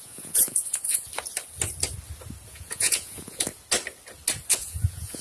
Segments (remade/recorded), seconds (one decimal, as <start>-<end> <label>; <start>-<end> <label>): 0.0-1.1 remade; 1.1-2.5 recorded; 2.5-3.5 remade; 3.5-4.5 recorded; 4.5-5.2 remade